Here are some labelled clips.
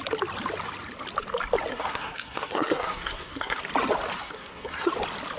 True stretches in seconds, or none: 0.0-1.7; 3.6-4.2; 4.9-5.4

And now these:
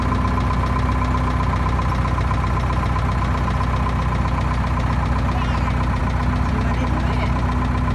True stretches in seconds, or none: 0.0-7.9

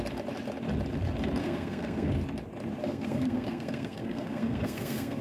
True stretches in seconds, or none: 0.0-1.4; 2.1-2.8

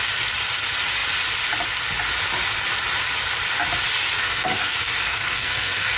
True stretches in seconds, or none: 0.0-4.2